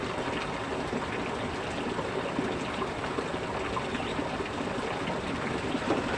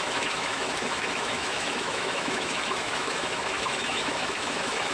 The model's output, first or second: second